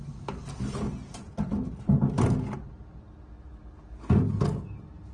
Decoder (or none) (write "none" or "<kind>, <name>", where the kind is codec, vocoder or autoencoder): none